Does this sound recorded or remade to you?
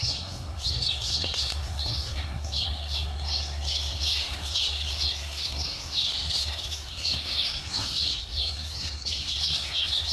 remade